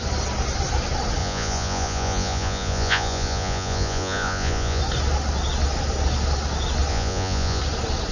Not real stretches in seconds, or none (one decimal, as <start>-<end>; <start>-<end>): 1.2-4.8; 6.9-7.6